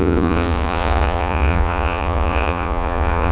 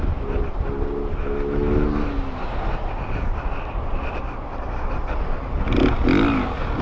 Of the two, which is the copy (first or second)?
first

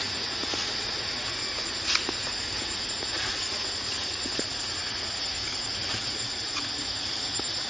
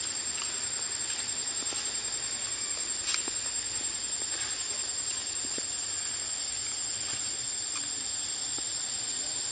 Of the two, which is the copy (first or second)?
first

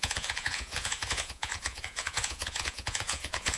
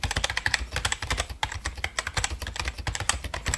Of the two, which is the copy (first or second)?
first